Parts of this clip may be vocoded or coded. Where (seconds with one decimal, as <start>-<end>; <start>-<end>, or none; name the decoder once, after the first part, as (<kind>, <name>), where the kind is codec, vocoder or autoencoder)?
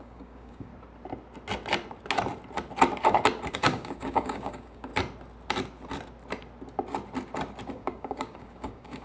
0.0-0.7 (codec, DAC); 3.5-4.9; 7.7-9.0